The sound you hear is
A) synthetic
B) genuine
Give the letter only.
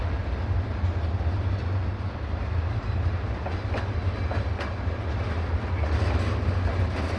B